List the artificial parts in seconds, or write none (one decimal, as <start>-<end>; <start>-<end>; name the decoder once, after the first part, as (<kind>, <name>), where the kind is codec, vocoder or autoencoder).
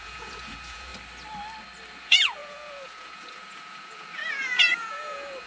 0.0-0.9 (vocoder, Vocos); 2.0-5.5